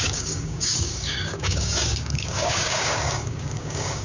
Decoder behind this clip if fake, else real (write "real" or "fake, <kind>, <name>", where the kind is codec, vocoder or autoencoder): fake, codec, DAC